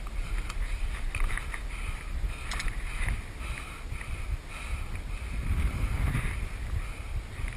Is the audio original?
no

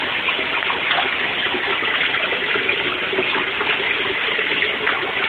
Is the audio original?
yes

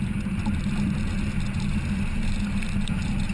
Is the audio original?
yes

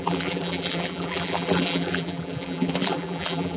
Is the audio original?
no